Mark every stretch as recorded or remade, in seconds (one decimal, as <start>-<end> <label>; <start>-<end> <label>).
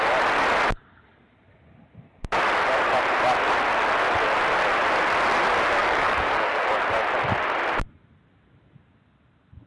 0.0-5.8 recorded; 5.8-6.7 remade; 6.7-9.7 recorded